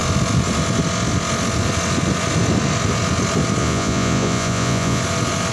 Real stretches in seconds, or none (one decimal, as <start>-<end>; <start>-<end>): 0.0-3.6; 5.0-5.5